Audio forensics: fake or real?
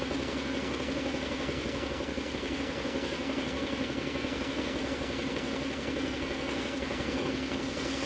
fake